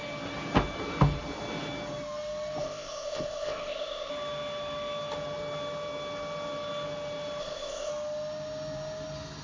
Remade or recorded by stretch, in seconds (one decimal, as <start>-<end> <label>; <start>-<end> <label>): 0.0-2.6 recorded; 2.6-4.1 remade; 4.1-7.4 recorded; 7.4-7.9 remade; 7.9-9.4 recorded